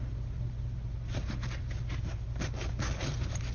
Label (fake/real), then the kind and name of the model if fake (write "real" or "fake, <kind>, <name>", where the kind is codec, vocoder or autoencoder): real